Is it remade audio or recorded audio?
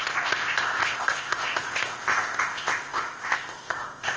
remade